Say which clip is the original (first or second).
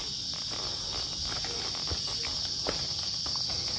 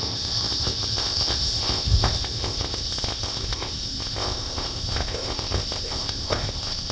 first